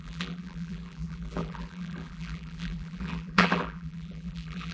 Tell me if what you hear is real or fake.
fake